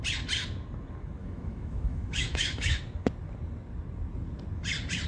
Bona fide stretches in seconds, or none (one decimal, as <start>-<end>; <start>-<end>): 0.0-1.2; 2.8-5.1